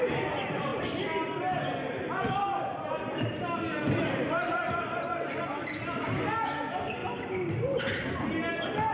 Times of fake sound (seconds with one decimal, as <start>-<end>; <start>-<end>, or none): 7.0-7.8

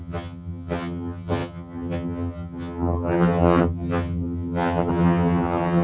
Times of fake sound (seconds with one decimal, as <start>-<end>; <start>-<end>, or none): 0.0-5.8

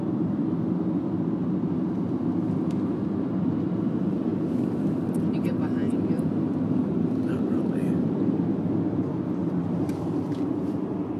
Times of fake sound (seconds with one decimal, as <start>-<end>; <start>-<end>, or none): 9.4-10.3

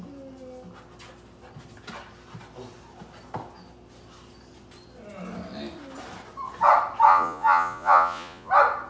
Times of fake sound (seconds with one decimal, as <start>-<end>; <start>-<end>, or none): 7.1-8.5

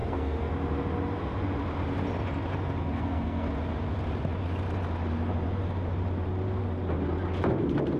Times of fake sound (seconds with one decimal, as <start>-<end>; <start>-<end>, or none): 0.0-0.5; 2.8-3.5

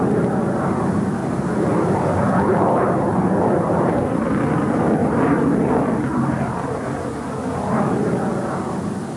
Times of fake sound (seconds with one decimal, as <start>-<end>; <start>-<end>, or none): 1.2-4.4; 5.0-5.7

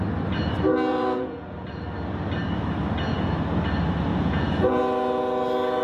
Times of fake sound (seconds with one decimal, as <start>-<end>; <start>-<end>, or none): 0.9-1.8; 4.1-4.8

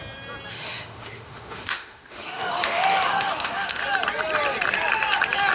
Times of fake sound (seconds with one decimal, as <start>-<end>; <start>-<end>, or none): 0.5-3.8